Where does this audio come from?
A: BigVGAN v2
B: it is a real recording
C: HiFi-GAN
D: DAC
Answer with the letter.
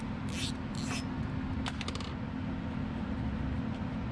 B